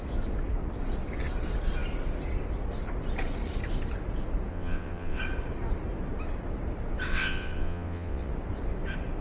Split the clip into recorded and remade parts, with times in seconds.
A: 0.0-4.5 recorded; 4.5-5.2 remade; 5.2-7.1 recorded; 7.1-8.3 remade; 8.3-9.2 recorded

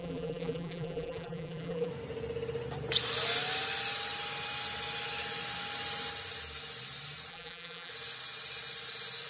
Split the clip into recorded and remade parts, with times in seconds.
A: 0.0-1.9 remade; 1.9-7.3 recorded; 7.3-7.9 remade; 7.9-9.3 recorded

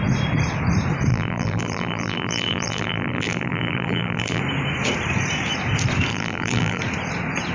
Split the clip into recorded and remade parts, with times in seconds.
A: 0.0-1.1 recorded; 1.1-4.4 remade; 4.4-6.1 recorded; 6.1-6.8 remade; 6.8-7.5 recorded

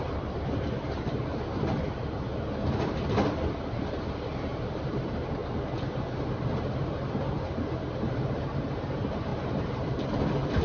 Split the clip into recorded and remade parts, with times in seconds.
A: 0.0-2.3 remade; 2.3-3.4 recorded; 3.4-5.4 remade; 5.4-6.3 recorded; 6.3-10.6 remade

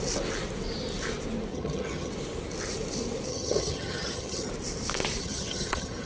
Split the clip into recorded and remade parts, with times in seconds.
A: 0.0-1.5 recorded; 1.5-2.1 remade; 2.1-3.3 recorded; 3.3-4.5 remade; 4.5-5.2 recorded; 5.2-6.1 remade

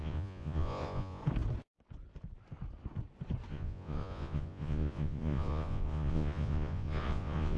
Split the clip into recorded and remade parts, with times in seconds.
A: 0.0-1.2 remade; 1.2-3.5 recorded; 3.5-7.6 remade